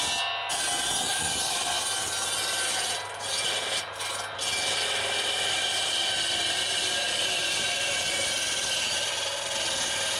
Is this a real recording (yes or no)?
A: yes